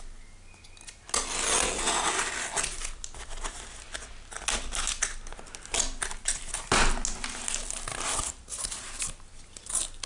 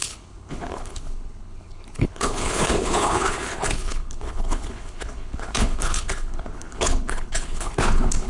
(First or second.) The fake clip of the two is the second